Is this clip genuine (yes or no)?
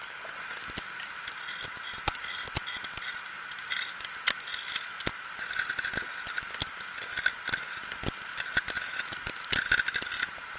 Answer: yes